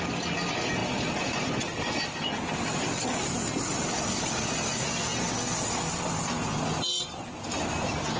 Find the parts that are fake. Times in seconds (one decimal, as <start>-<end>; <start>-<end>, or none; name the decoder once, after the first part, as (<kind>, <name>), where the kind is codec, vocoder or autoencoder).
none